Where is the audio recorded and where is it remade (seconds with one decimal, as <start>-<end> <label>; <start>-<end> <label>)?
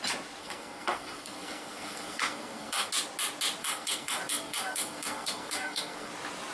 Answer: 0.0-0.4 recorded; 0.4-2.9 remade; 2.9-3.6 recorded; 3.6-6.1 remade; 6.1-6.5 recorded